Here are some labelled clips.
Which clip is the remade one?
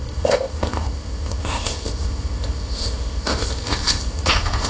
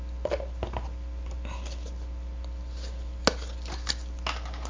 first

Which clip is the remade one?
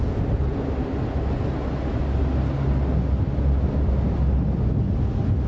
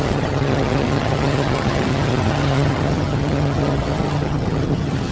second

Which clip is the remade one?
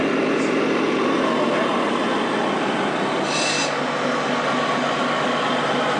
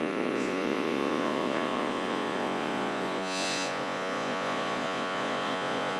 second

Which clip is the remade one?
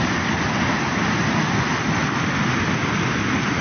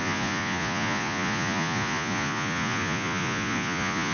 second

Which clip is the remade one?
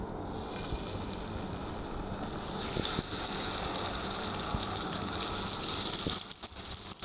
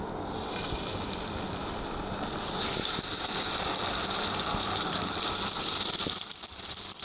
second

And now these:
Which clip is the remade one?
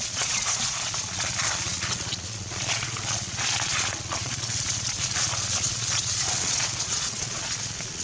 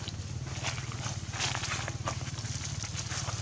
first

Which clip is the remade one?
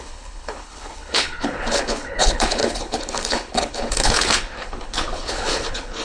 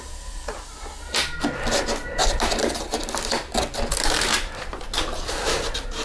first